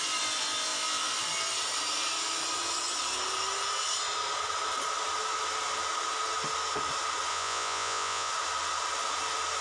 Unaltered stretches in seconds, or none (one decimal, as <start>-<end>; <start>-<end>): 0.0-7.3; 8.3-9.6